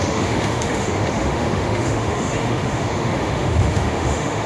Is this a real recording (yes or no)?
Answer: no